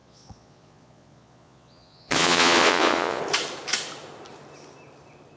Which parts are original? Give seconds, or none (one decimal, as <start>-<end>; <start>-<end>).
3.2-5.4